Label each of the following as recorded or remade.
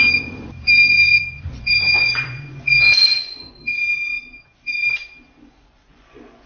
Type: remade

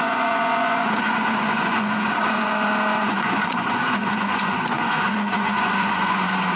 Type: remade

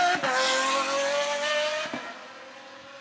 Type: recorded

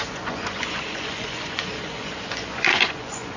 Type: remade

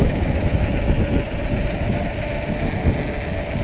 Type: recorded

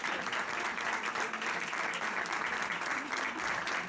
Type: recorded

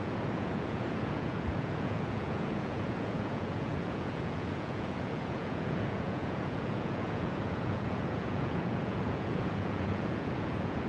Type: remade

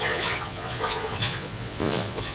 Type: remade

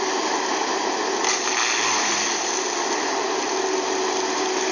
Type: recorded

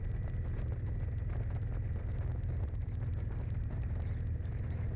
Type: recorded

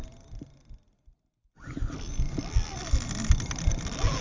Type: recorded